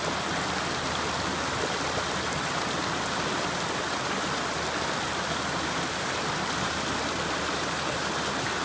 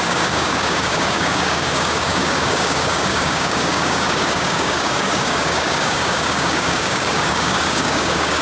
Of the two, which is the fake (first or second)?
second